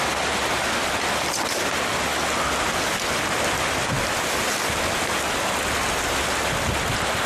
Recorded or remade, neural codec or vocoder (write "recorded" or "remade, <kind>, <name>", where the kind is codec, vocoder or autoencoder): recorded